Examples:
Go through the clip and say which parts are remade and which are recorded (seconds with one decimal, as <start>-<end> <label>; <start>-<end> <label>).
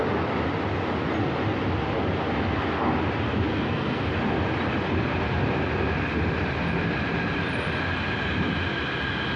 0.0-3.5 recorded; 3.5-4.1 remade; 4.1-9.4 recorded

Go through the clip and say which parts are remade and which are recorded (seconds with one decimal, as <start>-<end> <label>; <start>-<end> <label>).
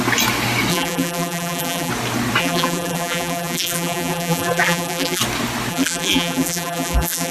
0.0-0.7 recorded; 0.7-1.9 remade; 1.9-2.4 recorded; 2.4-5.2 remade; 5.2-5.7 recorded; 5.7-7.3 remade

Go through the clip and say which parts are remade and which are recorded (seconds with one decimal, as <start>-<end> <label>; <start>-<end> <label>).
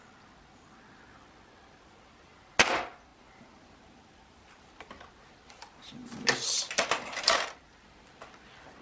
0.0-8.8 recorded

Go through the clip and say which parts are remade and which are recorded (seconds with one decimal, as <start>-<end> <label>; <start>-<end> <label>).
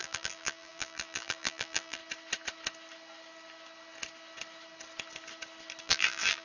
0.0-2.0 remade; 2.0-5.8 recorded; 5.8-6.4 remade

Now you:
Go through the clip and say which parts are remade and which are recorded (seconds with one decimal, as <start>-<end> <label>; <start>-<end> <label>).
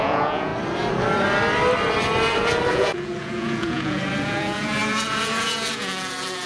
0.0-0.5 remade; 0.5-2.7 recorded; 2.7-6.5 remade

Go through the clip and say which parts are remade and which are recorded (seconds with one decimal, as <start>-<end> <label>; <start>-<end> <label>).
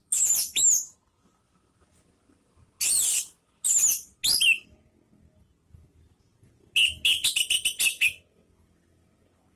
0.0-0.7 remade; 0.7-9.6 recorded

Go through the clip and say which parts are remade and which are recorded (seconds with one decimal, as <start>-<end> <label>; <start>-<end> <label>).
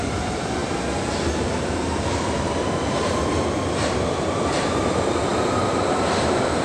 0.0-0.6 remade; 0.6-3.9 recorded; 3.9-5.3 remade; 5.3-6.1 recorded; 6.1-6.6 remade